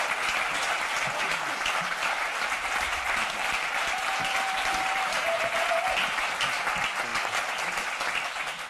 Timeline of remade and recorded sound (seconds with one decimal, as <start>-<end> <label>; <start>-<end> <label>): 0.0-1.7 recorded; 1.7-5.4 remade; 5.4-8.7 recorded